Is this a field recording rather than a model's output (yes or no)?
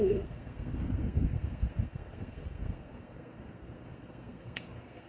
no